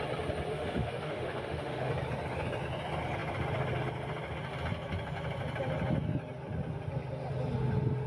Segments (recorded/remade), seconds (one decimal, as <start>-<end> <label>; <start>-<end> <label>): 0.0-0.5 recorded; 0.5-1.9 remade; 1.9-8.1 recorded